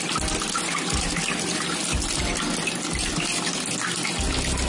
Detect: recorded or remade recorded